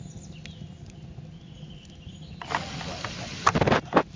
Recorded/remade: recorded